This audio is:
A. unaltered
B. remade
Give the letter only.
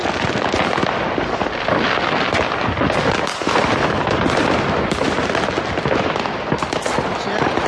A